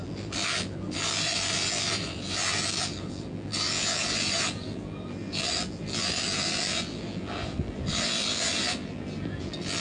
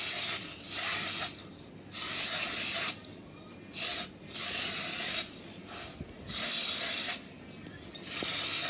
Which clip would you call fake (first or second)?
first